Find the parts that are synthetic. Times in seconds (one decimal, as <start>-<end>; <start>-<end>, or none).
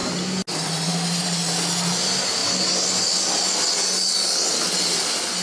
none